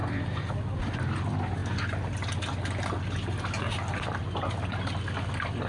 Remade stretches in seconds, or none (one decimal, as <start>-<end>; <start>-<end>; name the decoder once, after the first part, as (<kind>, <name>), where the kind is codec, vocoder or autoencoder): none